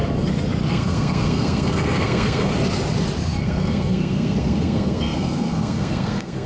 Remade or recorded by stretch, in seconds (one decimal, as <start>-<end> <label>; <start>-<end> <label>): 0.0-0.7 recorded; 0.7-2.5 remade; 2.5-3.4 recorded; 3.4-6.5 remade